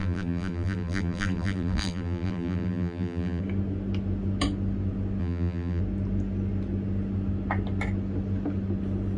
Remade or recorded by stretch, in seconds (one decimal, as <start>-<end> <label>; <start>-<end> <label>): 0.0-3.4 remade; 3.4-5.2 recorded; 5.2-5.8 remade; 5.8-9.2 recorded